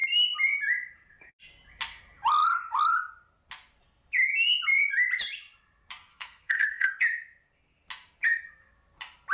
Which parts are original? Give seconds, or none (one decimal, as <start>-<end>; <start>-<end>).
0.0-6.1; 6.9-9.3